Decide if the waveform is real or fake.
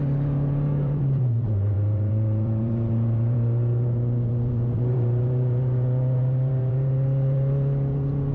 fake